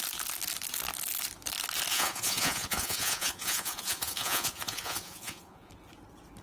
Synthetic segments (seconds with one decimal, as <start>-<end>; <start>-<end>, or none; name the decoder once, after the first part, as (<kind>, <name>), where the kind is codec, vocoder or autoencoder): 1.9-5.7 (vocoder, Vocos)